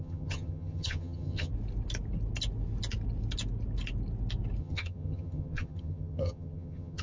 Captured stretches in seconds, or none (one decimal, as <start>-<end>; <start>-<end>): 1.5-4.6